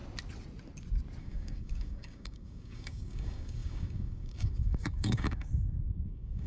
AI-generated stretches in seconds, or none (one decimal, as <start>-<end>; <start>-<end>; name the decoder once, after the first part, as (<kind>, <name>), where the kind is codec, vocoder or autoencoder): 1.2-6.5 (codec, DAC)